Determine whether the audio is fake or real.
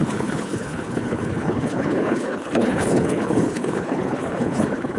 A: fake